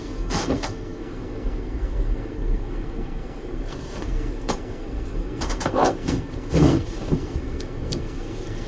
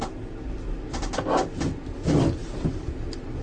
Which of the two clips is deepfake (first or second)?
first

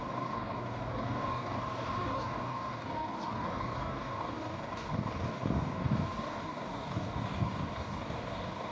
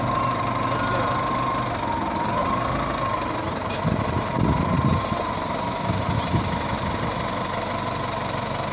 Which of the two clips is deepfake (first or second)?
first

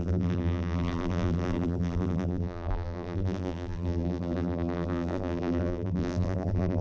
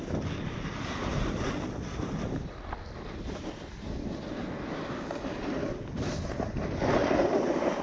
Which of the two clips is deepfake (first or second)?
first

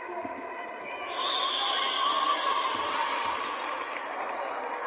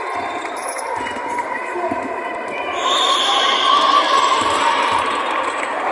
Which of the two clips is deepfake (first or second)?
second